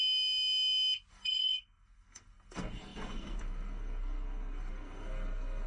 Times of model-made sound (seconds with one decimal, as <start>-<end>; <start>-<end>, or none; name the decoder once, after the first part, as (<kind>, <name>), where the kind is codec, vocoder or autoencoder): 1.1-5.7 (codec, SNAC)